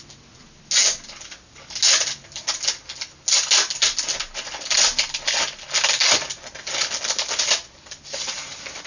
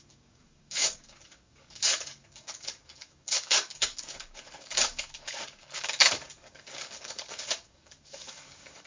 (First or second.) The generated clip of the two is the second